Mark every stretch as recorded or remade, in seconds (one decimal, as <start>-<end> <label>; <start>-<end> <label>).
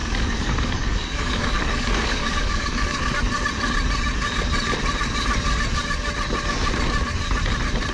0.0-3.0 remade; 3.0-7.9 recorded